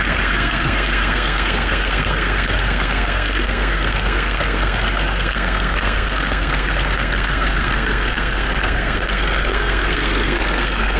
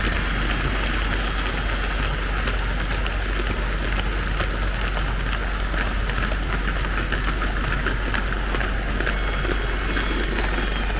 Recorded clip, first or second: second